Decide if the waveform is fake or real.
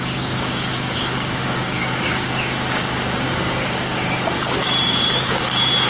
fake